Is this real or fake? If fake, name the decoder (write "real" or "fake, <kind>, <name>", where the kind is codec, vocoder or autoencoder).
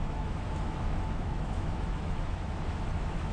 fake, autoencoder, DAC-VAE